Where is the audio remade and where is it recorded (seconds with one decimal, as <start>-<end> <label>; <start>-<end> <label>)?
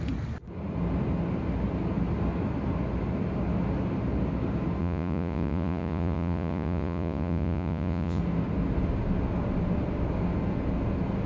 0.0-4.8 recorded; 4.8-8.2 remade; 8.2-11.3 recorded